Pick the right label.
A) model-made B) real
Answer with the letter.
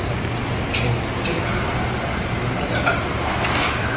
B